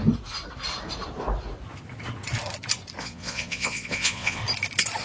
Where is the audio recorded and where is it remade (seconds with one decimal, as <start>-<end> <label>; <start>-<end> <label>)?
0.0-3.0 recorded; 3.0-4.4 remade; 4.4-5.0 recorded